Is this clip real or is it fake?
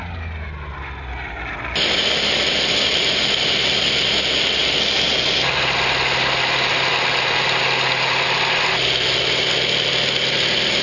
real